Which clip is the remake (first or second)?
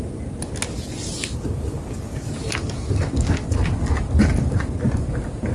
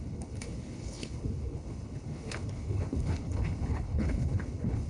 second